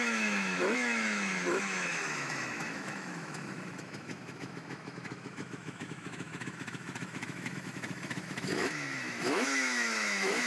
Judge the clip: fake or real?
fake